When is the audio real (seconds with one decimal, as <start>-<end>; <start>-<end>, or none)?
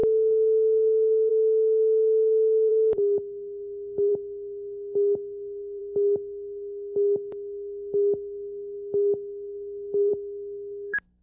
0.0-1.3